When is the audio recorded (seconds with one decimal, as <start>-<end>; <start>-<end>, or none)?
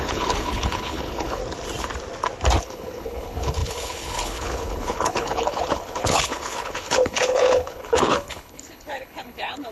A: 1.4-2.6